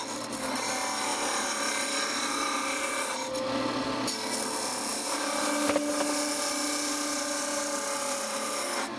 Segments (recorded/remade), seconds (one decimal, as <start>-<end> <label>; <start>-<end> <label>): 0.0-1.1 recorded; 1.1-1.7 remade; 1.7-4.9 recorded; 4.9-6.3 remade; 6.3-6.9 recorded; 6.9-7.4 remade; 7.4-9.0 recorded